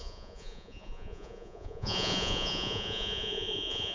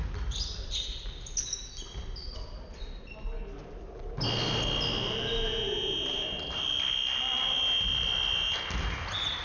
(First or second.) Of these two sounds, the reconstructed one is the first